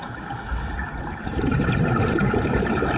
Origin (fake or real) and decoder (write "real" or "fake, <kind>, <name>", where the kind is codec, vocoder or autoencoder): fake, vocoder, BigVGAN v2